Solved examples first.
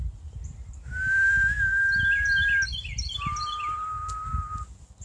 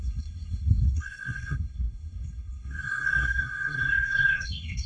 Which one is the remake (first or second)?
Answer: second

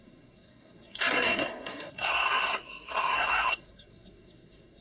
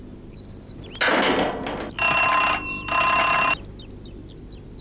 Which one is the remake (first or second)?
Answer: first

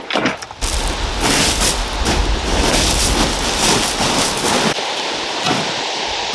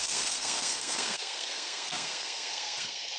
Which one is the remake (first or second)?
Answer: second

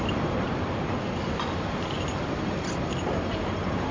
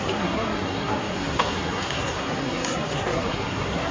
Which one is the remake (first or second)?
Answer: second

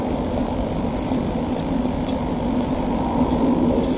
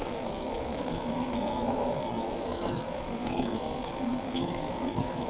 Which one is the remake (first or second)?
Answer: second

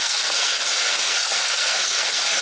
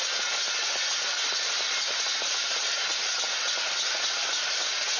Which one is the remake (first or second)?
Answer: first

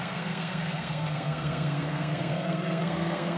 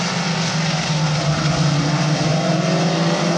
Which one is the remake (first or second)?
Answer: first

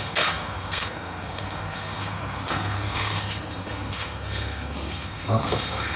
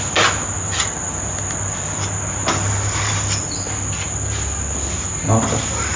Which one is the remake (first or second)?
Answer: first